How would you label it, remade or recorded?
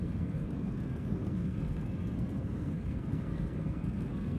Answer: remade